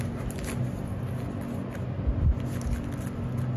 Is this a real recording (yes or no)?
yes